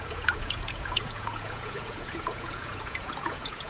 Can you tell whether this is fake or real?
fake